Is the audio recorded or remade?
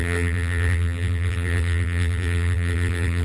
remade